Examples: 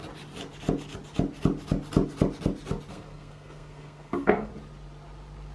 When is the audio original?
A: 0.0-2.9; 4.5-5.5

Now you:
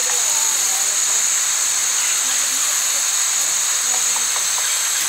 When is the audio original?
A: 0.0-5.1

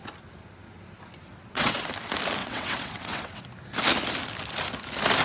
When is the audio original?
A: 0.0-1.3; 1.9-2.4; 3.4-5.2

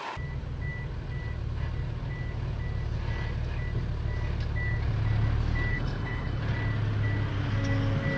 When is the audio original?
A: 0.0-5.7; 6.4-8.2

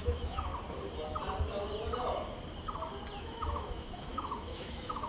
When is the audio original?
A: 0.5-3.2

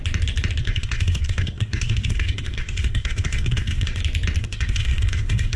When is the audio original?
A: 0.0-0.6; 4.0-4.4